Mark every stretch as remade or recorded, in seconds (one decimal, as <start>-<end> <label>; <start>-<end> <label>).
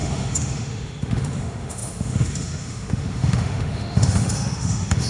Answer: 0.0-5.1 remade